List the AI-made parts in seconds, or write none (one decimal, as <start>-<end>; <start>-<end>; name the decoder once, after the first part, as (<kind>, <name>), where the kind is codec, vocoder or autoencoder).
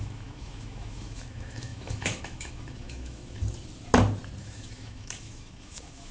0.0-3.4 (autoencoder, DAC-VAE); 4.4-6.1